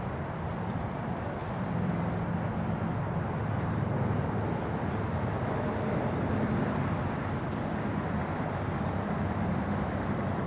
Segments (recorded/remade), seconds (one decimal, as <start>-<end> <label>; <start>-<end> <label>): 0.0-10.5 recorded